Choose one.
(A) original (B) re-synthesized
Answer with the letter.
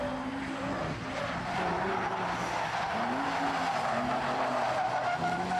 A